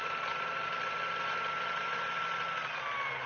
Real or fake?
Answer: real